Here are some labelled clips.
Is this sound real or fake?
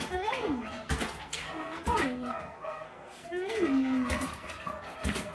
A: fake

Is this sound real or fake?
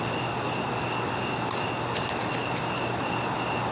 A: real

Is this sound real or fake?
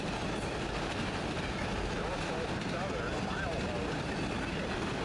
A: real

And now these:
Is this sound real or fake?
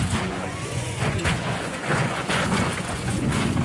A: fake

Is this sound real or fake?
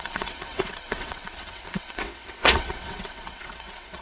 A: fake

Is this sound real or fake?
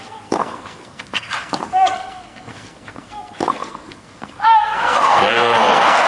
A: fake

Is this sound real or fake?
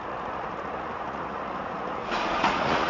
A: fake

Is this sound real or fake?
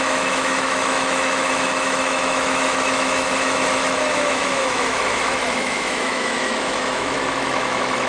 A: fake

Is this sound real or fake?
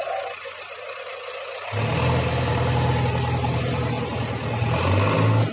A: real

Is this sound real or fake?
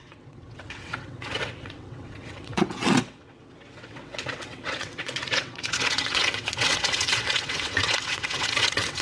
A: fake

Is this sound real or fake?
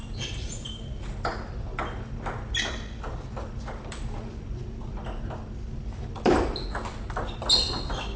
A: real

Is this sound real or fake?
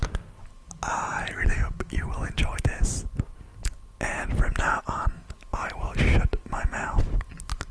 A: real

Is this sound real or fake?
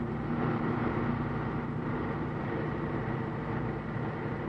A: fake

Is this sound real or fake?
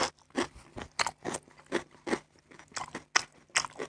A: real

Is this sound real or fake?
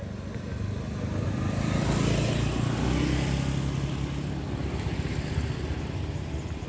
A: real